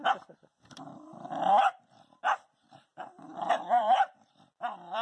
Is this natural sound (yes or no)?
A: no